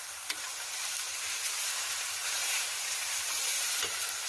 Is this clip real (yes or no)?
no